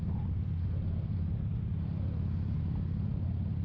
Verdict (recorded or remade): recorded